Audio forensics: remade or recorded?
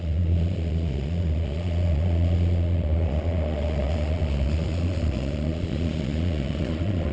remade